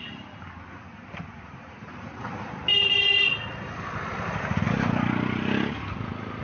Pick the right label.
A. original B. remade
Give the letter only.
A